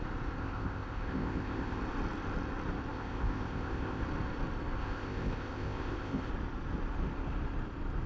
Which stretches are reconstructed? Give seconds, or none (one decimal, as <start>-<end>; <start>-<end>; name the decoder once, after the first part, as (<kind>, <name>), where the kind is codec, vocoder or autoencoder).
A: 0.4-1.8 (codec, ZipCodec); 2.9-4.0; 4.8-6.3